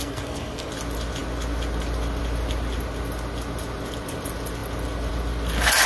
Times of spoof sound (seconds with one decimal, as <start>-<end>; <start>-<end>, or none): 0.0-0.7